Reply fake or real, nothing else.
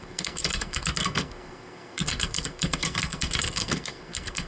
fake